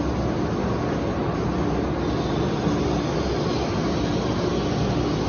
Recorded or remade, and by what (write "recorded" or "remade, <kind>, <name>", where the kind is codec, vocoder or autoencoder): recorded